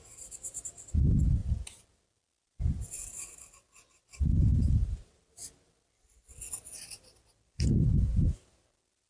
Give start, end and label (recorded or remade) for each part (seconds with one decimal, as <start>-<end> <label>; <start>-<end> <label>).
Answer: 0.0-1.4 recorded; 1.4-6.6 remade; 6.6-9.1 recorded